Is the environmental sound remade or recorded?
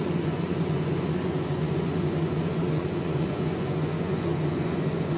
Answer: remade